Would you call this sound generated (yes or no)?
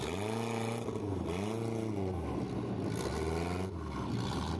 no